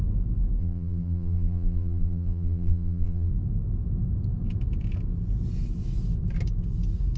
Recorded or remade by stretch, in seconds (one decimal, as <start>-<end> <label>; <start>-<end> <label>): 0.0-0.6 recorded; 0.6-3.3 remade; 3.3-7.2 recorded